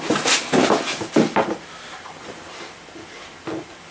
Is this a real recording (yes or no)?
yes